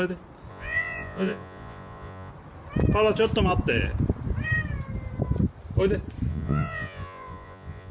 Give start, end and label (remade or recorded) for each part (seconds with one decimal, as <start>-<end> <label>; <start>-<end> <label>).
0.0-0.5 recorded; 0.5-2.3 remade; 2.3-6.3 recorded; 6.3-7.9 remade